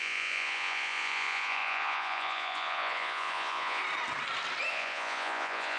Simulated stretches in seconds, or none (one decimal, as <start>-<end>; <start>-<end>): 0.0-3.8; 4.7-5.8

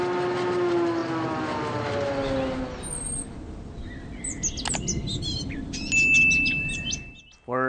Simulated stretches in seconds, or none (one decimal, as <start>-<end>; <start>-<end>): none